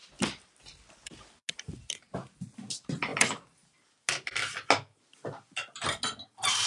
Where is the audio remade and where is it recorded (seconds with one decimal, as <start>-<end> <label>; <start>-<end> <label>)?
0.0-6.7 recorded